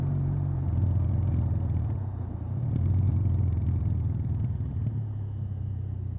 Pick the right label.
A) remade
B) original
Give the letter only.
A